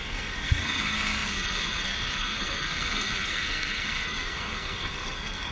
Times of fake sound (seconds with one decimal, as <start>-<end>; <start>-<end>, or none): 0.0-5.5